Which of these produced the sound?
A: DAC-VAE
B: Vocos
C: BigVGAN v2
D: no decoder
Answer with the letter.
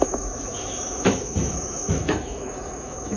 A